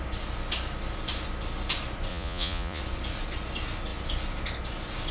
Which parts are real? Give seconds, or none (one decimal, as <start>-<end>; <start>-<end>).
0.0-2.1; 2.8-5.1